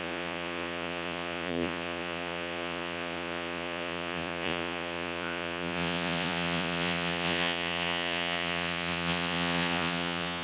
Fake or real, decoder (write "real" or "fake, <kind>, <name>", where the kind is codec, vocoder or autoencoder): fake, vocoder, Vocos